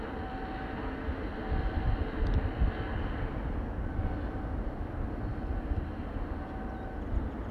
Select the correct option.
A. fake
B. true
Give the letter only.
B